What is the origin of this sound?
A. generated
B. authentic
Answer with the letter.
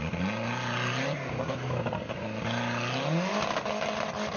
B